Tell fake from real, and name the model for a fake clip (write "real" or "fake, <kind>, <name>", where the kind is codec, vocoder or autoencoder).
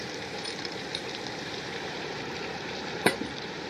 fake, vocoder, BigVGAN v2